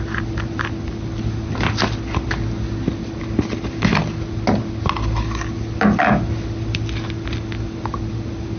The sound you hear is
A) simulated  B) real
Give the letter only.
B